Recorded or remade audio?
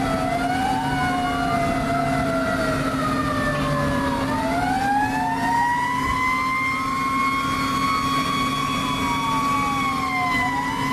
recorded